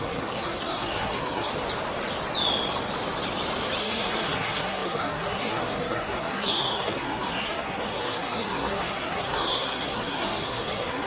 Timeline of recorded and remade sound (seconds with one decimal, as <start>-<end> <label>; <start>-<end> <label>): 0.0-1.5 remade; 1.5-3.8 recorded; 3.8-11.1 remade